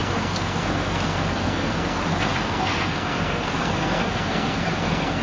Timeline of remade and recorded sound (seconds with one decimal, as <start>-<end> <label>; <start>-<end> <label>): 0.0-5.2 remade